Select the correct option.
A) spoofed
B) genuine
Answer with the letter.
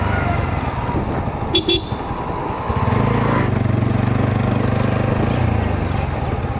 B